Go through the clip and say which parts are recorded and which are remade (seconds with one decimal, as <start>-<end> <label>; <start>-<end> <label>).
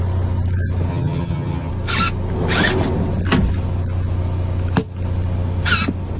0.0-0.9 recorded; 0.9-1.7 remade; 1.7-6.2 recorded